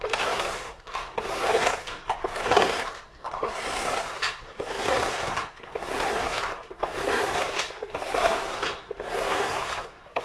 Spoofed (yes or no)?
yes